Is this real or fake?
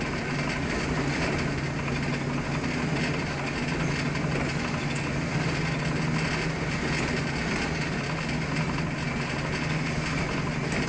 real